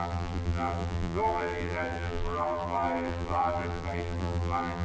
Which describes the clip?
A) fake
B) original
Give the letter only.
A